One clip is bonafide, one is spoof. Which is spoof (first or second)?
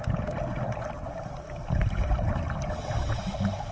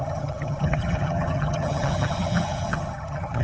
second